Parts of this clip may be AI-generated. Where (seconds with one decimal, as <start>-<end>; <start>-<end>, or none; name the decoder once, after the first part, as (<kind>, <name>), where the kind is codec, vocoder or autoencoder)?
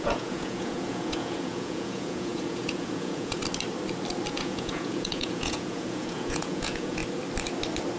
0.0-3.4 (vocoder, Vocos); 4.3-7.0